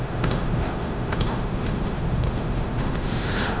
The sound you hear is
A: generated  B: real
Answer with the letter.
A